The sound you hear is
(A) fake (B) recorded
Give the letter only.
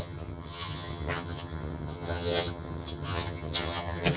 A